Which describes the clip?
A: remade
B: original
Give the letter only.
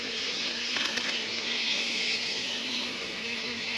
A